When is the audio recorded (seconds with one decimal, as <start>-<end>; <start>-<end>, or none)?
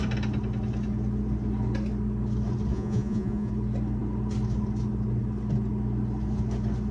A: 0.0-2.7; 3.5-6.9